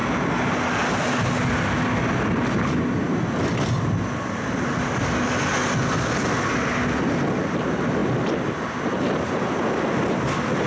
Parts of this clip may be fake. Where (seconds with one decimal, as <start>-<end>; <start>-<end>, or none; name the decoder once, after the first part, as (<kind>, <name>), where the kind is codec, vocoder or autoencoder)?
none